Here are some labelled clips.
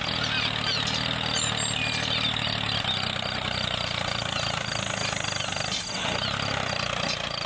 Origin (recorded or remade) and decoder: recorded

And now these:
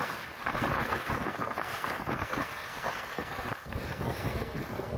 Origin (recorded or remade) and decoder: remade, codec, SNAC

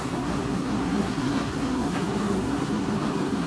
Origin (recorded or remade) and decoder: remade, codec, SNAC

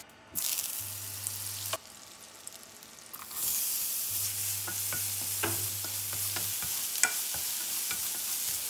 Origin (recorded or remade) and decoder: recorded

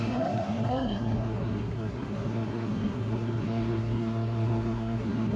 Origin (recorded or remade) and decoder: remade, codec, SNAC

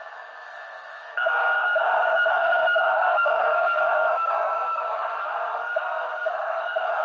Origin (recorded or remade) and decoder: remade, codec, SNAC